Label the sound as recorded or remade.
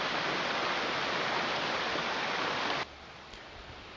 recorded